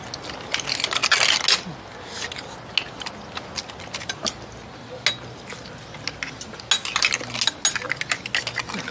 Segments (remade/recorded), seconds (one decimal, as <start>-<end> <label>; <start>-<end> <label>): 0.0-8.9 recorded